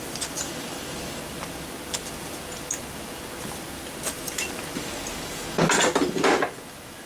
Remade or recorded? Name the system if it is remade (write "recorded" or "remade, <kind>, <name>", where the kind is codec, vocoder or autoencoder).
recorded